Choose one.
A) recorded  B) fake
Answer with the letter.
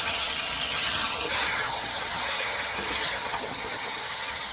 B